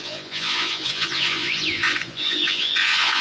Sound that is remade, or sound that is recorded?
remade